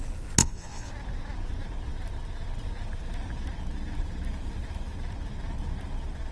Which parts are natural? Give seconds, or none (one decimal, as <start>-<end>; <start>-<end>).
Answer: 0.0-0.4; 0.9-6.3